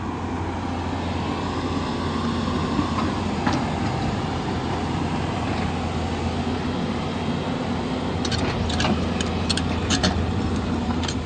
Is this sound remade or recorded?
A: recorded